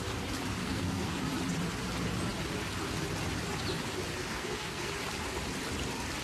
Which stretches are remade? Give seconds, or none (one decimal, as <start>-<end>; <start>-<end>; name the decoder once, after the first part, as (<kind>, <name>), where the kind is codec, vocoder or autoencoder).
0.6-1.2 (codec, SNAC); 4.1-4.9